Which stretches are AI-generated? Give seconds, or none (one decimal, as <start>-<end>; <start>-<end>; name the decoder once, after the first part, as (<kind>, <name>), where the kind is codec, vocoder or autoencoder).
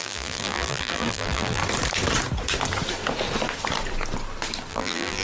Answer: 0.0-1.6 (vocoder, BigVGAN v2); 4.7-5.2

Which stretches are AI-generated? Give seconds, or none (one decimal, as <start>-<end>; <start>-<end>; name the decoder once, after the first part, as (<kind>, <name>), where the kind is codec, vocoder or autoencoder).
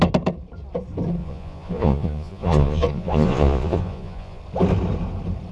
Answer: 1.2-4.4 (vocoder, Vocos)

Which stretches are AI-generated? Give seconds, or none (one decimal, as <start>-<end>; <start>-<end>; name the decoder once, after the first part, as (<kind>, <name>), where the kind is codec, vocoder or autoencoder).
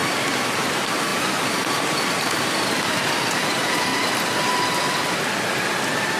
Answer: 0.7-3.9 (vocoder, BigVGAN v2)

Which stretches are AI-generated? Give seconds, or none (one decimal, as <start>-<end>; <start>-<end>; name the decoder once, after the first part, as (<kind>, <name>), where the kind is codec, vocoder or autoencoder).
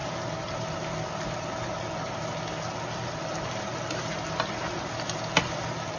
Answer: none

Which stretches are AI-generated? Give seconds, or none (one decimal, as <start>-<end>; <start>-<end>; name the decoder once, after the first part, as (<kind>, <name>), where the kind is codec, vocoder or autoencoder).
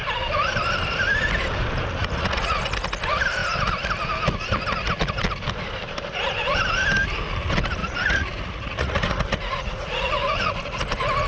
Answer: 2.0-2.6 (vocoder, Vocos); 7.8-10.8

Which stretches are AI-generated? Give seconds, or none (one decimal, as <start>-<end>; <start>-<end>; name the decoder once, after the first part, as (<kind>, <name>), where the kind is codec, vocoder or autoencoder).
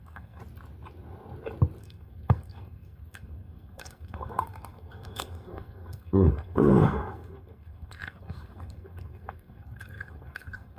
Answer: 0.0-0.4 (codec, SNAC); 1.8-10.8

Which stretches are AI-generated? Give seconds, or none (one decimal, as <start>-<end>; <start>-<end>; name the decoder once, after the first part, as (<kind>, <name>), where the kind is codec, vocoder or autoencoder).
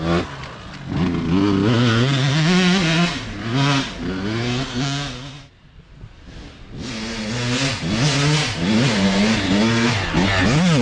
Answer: 8.4-9.5 (vocoder, BigVGAN v2)